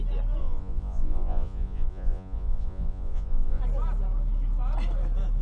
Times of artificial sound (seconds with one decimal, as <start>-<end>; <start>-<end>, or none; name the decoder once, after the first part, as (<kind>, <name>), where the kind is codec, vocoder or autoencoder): 0.4-3.6 (vocoder, Vocos)